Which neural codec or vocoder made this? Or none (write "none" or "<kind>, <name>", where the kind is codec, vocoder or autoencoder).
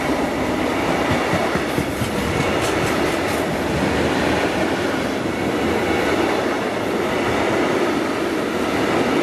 none